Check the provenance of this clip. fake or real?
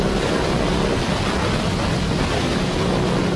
real